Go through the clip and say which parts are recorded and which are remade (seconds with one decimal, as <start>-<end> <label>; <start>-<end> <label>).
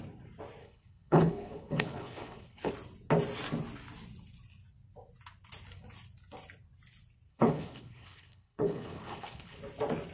0.0-0.6 recorded; 0.6-2.7 remade; 2.7-7.3 recorded; 7.3-9.6 remade; 9.6-10.1 recorded